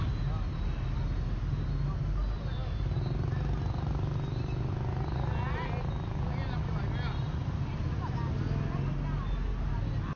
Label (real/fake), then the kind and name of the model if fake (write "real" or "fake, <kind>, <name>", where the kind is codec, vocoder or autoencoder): real